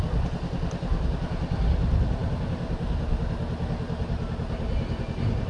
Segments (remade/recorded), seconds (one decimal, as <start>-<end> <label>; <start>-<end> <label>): 0.0-5.5 recorded